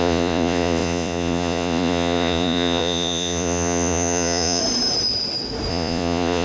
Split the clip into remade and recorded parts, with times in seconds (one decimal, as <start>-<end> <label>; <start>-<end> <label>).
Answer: 0.0-4.6 remade; 4.6-5.7 recorded; 5.7-6.4 remade